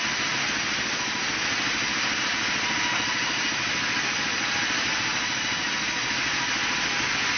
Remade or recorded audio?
recorded